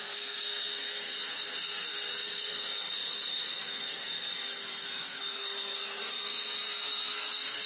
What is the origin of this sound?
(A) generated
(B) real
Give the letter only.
A